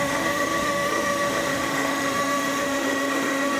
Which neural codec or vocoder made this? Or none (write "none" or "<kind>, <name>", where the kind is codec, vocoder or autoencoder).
autoencoder, DAC-VAE